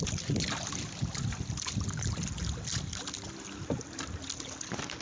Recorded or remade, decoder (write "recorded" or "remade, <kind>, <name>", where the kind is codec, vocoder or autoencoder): recorded